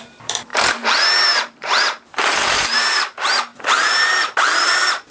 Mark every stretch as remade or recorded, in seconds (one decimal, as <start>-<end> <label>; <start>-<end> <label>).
0.0-5.1 remade